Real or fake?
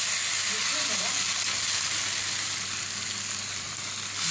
real